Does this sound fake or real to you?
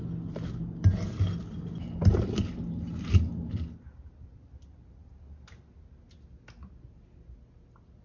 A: real